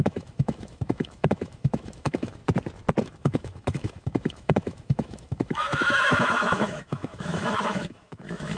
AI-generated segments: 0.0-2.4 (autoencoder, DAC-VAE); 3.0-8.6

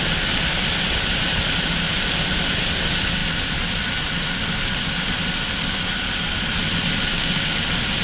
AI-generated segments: none

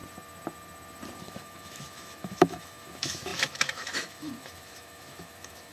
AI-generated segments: 1.2-5.7 (autoencoder, DAC-VAE)

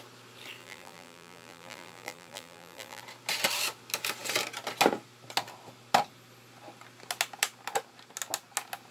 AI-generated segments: 0.6-3.0 (vocoder, BigVGAN v2)